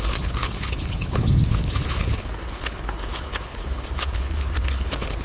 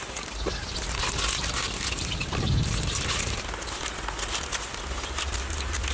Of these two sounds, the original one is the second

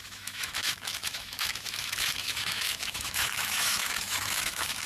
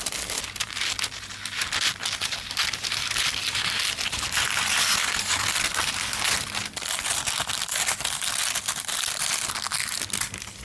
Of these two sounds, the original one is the second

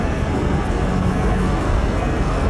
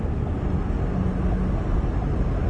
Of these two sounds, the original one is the second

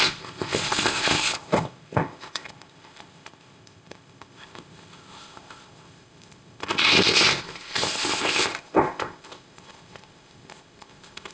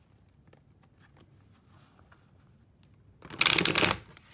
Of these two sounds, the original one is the second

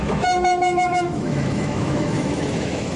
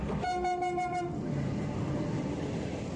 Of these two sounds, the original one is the second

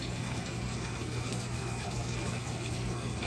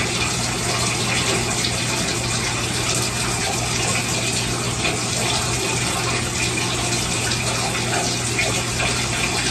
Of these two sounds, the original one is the second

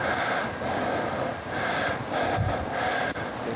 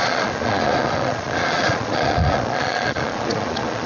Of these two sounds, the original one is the first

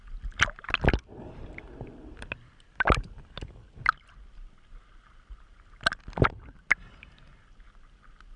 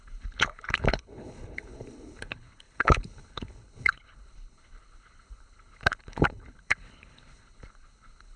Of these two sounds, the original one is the first